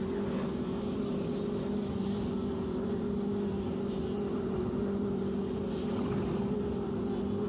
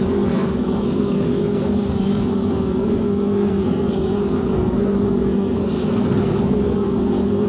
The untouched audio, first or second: first